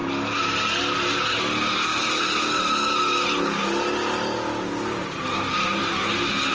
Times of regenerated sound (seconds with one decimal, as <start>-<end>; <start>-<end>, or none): none